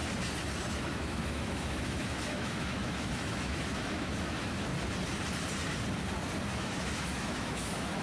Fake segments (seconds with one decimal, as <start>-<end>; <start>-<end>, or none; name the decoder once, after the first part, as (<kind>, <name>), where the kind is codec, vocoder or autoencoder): 0.7-4.7 (autoencoder, DAC-VAE); 6.5-8.0